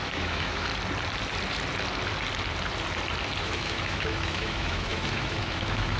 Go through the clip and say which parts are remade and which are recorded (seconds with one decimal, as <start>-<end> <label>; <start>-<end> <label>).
0.0-0.7 remade; 0.7-3.4 recorded; 3.4-6.0 remade